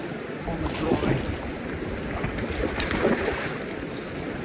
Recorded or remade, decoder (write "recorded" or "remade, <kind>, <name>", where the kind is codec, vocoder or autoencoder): remade, vocoder, BigVGAN v2